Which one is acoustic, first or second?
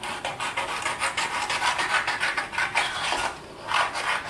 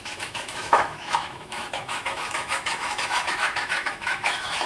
first